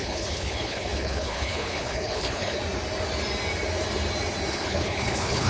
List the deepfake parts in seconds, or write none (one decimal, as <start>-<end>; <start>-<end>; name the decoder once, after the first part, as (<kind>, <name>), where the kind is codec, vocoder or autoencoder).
0.0-2.6 (codec, HILCodec); 4.5-5.5